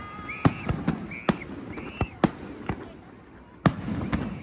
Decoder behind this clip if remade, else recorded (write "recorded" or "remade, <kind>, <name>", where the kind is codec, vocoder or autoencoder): recorded